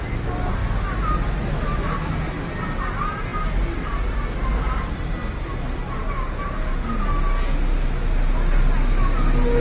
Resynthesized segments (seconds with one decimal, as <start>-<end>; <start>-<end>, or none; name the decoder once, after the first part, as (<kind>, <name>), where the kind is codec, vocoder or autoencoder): none